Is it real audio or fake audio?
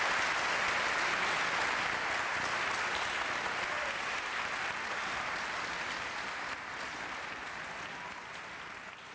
real